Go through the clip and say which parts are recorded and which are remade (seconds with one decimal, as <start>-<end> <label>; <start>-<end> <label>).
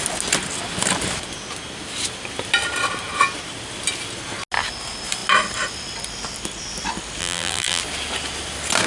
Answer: 0.0-7.2 recorded; 7.2-7.8 remade; 7.8-8.9 recorded